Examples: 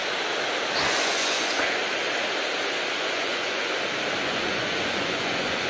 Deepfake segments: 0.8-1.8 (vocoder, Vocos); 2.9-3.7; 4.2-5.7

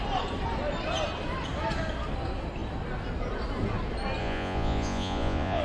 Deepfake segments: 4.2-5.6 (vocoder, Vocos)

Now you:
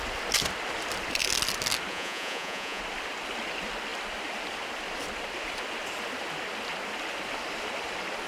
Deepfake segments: 1.9-2.8 (vocoder, Vocos)

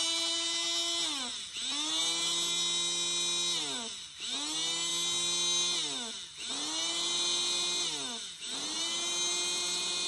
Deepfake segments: none